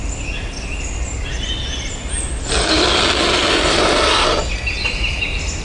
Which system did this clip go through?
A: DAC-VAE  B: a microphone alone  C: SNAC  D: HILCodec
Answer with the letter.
B